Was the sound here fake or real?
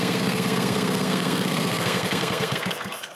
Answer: fake